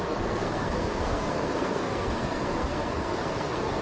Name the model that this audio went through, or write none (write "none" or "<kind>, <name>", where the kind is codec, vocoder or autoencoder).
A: codec, SNAC